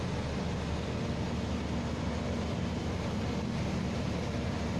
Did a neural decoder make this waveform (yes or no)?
no